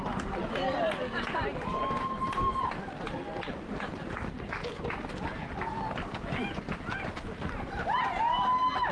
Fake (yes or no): no